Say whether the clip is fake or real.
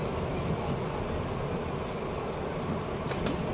real